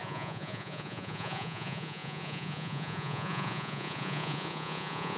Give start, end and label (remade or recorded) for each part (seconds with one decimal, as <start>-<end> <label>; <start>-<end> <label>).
0.0-5.2 remade